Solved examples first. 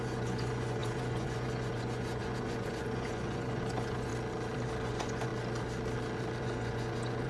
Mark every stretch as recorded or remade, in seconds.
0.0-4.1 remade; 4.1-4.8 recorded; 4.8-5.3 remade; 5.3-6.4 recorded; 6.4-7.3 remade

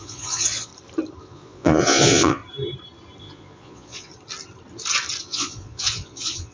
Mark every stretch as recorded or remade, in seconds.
0.0-0.7 remade; 0.7-1.2 recorded; 1.2-2.4 remade; 2.4-3.2 recorded; 3.2-4.1 remade; 4.1-5.2 recorded; 5.2-6.5 remade

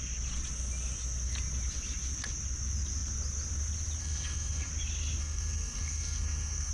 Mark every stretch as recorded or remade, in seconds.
0.0-4.0 recorded; 4.0-4.7 remade; 4.7-5.2 recorded; 5.2-6.7 remade